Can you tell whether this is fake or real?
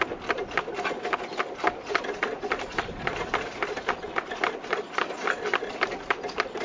real